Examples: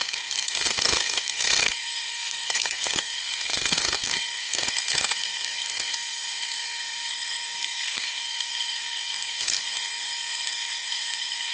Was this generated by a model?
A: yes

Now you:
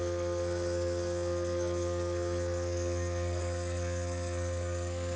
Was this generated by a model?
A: yes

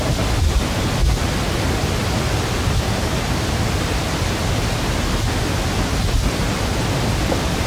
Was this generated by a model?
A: no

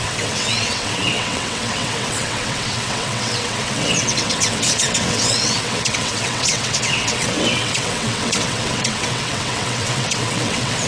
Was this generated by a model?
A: yes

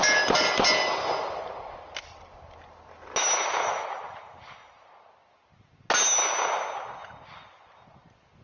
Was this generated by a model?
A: no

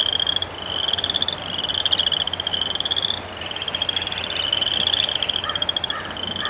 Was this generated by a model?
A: no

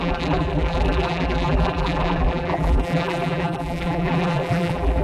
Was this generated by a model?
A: yes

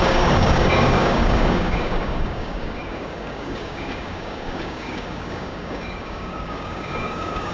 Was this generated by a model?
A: yes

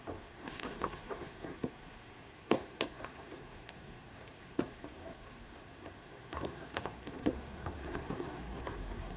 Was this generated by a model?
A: yes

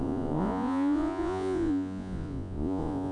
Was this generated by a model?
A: yes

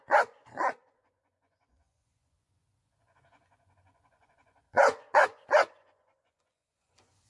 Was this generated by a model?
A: yes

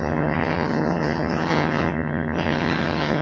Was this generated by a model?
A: yes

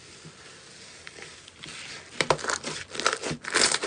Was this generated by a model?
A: no